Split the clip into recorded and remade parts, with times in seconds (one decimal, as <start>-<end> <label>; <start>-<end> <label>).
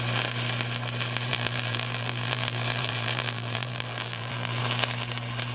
0.0-1.3 recorded; 1.3-4.6 remade; 4.6-5.5 recorded